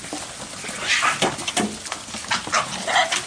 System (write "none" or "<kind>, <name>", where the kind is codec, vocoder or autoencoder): none